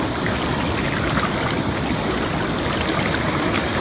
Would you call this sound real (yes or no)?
yes